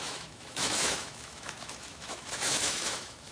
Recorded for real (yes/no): no